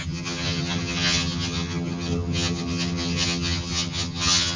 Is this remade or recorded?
remade